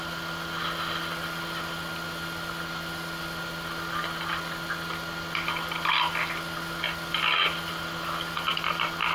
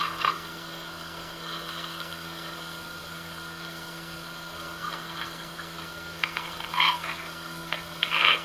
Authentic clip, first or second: first